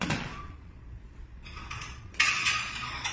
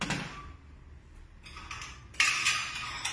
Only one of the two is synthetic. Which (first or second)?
first